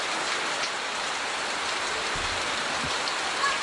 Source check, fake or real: real